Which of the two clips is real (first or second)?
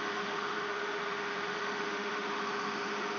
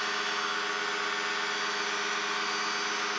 second